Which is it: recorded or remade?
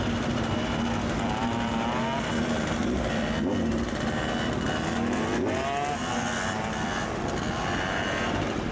recorded